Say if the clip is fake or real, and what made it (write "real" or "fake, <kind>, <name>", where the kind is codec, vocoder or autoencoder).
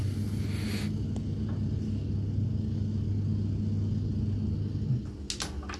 real